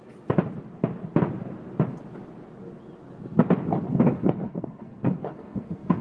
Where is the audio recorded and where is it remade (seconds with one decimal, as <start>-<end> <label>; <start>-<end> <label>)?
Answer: 0.0-3.9 recorded; 3.9-6.0 remade